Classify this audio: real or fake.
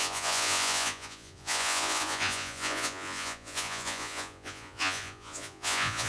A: fake